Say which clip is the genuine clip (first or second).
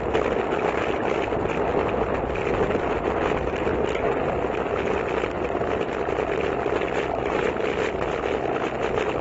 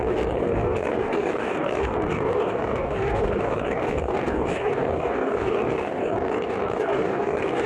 first